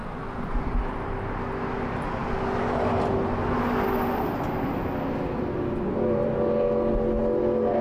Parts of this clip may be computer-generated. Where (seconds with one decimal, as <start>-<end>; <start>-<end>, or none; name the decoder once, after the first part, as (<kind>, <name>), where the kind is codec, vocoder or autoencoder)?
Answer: none